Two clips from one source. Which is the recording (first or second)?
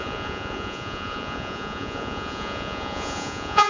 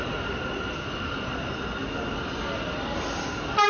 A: second